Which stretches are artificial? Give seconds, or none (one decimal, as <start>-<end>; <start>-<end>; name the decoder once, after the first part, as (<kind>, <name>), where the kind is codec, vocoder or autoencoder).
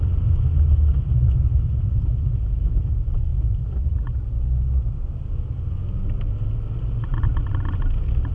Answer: 0.9-2.9 (vocoder, BigVGAN v2)